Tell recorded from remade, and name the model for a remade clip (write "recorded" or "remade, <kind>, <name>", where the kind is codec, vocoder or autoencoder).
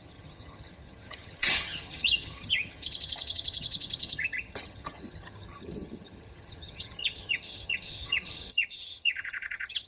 remade, vocoder, HiFi-GAN